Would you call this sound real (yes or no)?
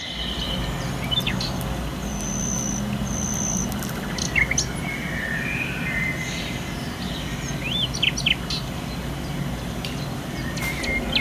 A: yes